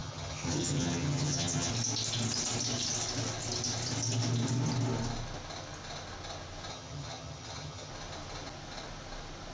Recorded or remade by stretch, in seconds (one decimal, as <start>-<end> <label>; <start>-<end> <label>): 0.0-1.7 remade; 1.7-6.7 recorded; 6.7-7.9 remade; 7.9-9.5 recorded